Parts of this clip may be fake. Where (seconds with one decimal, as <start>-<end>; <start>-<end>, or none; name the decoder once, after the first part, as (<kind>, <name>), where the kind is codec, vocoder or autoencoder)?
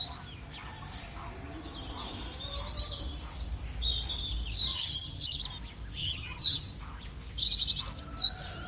4.7-5.4 (vocoder, HiFi-GAN); 6.0-6.6